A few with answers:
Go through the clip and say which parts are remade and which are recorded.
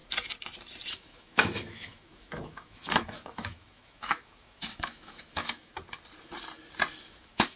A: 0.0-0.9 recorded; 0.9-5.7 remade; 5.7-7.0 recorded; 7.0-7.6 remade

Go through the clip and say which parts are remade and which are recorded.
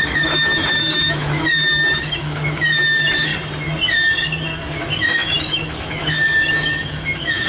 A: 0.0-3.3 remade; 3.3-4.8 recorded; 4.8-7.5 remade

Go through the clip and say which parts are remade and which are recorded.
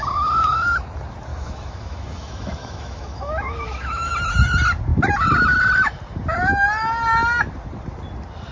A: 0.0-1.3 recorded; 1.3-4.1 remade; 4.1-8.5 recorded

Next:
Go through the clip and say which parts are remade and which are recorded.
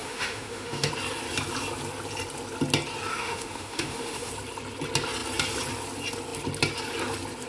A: 0.0-0.9 remade; 0.9-3.1 recorded; 3.1-4.3 remade; 4.3-7.5 recorded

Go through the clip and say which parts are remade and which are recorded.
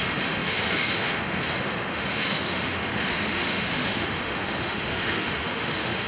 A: 0.0-6.1 remade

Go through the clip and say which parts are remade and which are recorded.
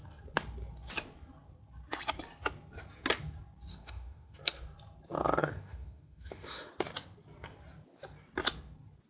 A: 0.0-3.7 recorded; 3.7-4.4 remade; 4.4-5.4 recorded; 5.4-6.7 remade; 6.7-9.1 recorded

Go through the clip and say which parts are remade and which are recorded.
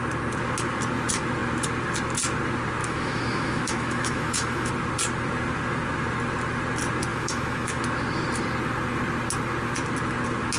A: 0.0-2.8 recorded; 2.8-4.7 remade; 4.7-7.1 recorded; 7.1-7.8 remade; 7.8-10.6 recorded